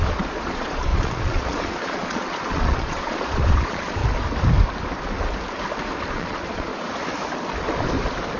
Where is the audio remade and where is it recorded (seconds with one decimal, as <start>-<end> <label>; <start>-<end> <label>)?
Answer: 0.0-4.0 remade; 4.0-6.1 recorded; 6.1-6.7 remade; 6.7-8.4 recorded